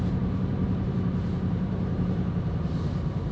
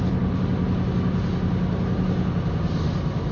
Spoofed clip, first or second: first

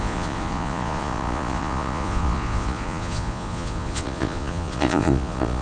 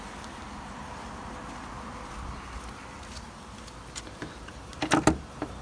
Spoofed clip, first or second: first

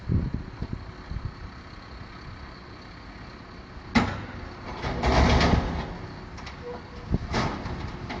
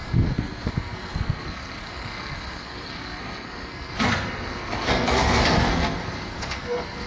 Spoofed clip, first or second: second